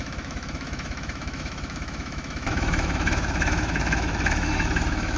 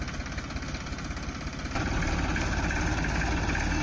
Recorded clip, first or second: second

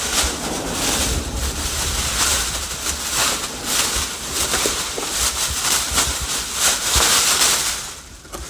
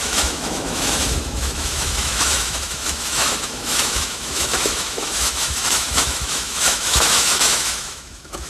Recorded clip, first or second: first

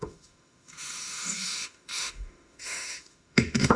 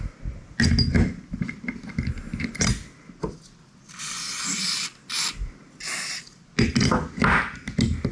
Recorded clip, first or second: second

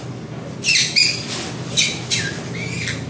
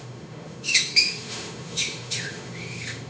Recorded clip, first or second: first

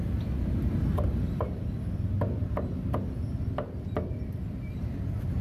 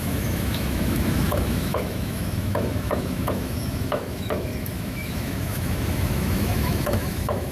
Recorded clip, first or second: first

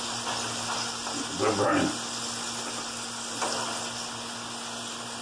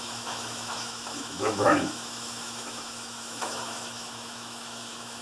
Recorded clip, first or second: first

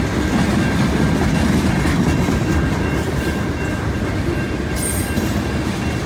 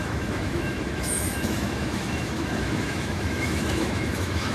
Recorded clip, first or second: first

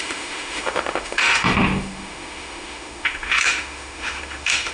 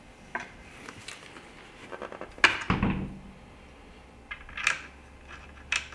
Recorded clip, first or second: second